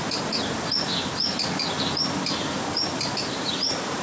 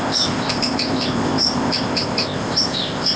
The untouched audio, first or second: first